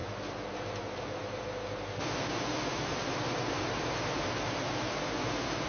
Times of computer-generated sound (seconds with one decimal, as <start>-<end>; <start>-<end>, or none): none